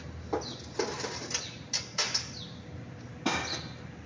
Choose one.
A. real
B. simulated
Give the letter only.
A